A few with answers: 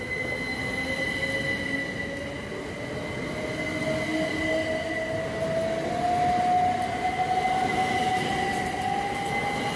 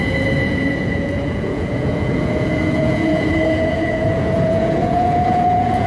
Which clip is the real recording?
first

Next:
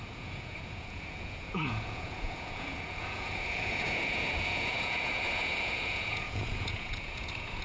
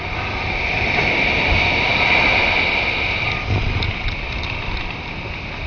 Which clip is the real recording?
second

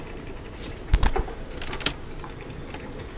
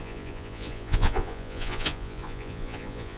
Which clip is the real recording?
first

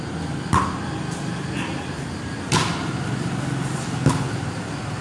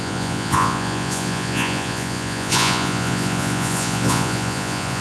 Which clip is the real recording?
first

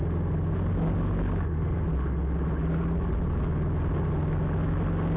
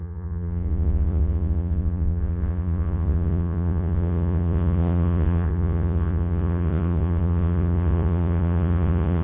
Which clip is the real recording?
first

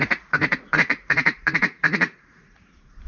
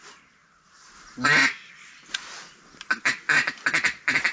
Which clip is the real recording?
second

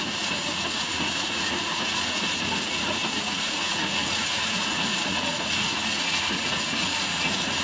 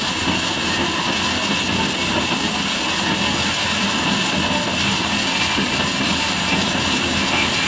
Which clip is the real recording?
second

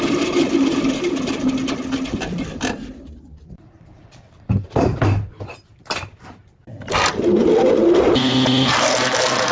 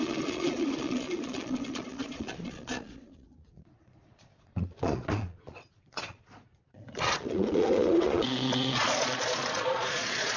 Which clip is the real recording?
first